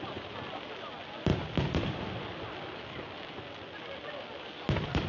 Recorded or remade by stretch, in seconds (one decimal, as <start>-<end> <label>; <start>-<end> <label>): 0.0-5.1 recorded